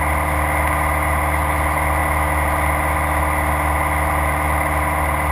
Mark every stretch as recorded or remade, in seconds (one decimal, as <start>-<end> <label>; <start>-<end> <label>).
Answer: 0.0-5.3 recorded